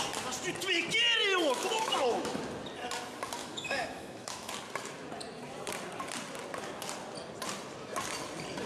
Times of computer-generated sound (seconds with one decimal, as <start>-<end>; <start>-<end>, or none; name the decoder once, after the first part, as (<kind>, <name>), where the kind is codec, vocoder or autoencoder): 1.3-2.4 (autoencoder, DAC-VAE); 3.4-4.5